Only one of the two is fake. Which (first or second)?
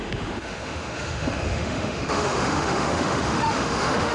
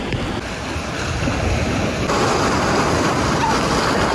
first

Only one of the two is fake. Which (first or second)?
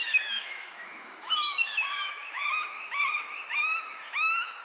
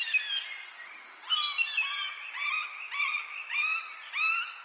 first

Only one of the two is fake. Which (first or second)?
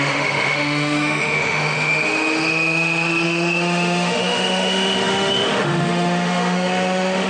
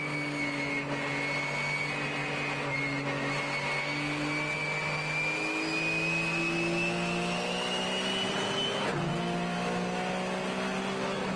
first